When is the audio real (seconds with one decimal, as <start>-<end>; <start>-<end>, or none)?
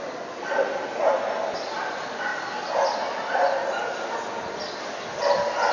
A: 0.0-5.7